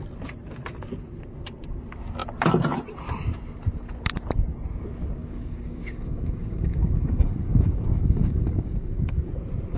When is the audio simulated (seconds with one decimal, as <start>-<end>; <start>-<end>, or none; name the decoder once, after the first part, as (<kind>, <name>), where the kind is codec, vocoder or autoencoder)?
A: 5.2-9.3 (codec, DAC)